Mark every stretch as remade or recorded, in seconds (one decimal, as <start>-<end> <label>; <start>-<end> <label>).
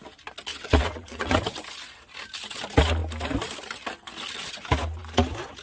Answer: 0.0-0.5 recorded; 0.5-1.3 remade; 1.3-5.6 recorded